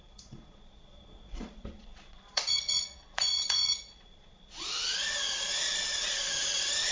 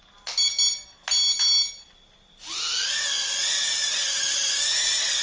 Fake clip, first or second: first